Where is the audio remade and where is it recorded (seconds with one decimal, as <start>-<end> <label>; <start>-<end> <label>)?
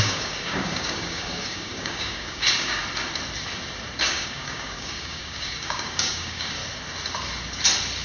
0.0-2.8 remade; 2.8-4.0 recorded; 4.0-6.6 remade; 6.6-8.0 recorded